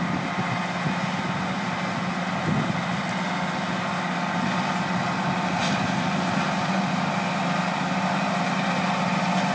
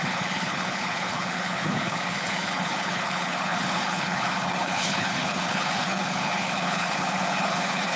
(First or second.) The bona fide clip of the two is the first